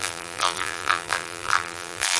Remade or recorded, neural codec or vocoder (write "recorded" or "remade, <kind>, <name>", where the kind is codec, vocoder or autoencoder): remade, vocoder, BigVGAN v2